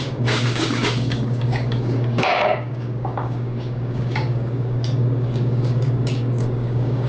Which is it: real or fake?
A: fake